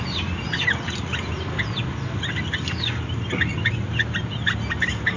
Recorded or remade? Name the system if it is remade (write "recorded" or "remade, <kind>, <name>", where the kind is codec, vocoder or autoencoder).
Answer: recorded